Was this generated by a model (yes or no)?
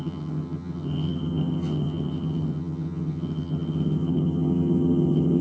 yes